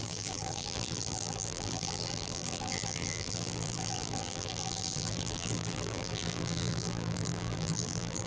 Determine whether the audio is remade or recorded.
remade